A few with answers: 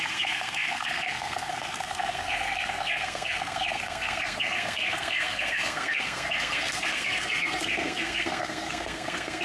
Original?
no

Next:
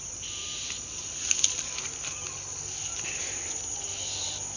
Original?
yes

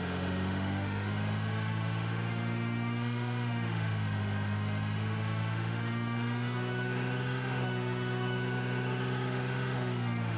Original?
no